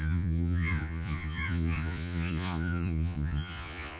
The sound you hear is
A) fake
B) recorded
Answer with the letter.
A